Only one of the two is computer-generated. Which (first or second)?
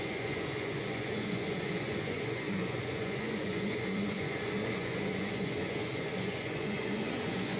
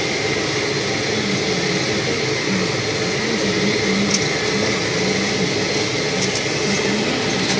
first